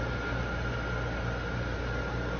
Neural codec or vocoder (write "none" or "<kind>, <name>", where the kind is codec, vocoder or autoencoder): none